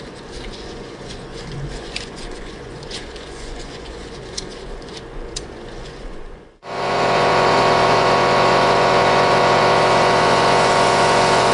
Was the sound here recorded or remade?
remade